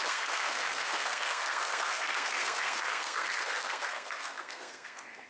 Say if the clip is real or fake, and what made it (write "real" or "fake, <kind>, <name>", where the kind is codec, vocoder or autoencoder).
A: fake, codec, SNAC